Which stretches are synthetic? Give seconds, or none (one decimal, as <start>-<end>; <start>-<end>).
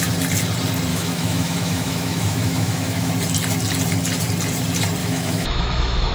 0.9-3.1; 5.0-6.1